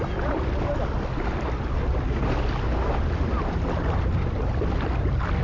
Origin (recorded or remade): recorded